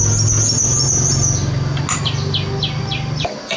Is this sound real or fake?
real